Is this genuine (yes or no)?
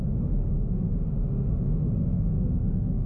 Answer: no